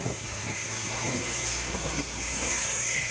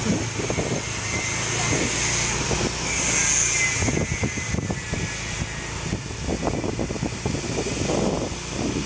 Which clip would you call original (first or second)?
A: second